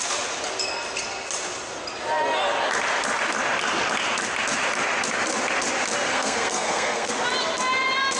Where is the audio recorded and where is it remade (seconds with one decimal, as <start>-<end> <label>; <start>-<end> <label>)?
0.0-6.1 recorded; 6.1-7.1 remade; 7.1-8.2 recorded